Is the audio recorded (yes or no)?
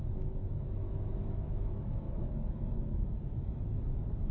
no